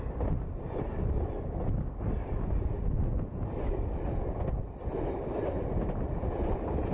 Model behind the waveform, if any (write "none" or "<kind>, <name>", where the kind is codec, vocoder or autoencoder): none